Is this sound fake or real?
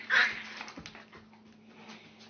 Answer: real